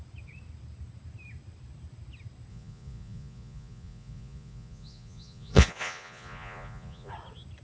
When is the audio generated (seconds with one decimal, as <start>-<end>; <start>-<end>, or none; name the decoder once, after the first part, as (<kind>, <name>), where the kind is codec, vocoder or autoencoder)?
2.5-7.1 (vocoder, Vocos)